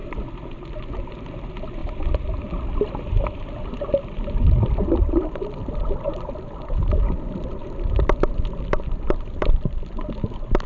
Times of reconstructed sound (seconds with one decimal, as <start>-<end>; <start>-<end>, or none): 0.0-7.6; 8.3-10.7